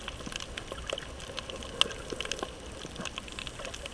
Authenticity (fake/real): real